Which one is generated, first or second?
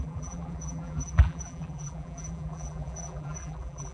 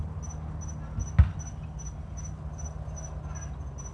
first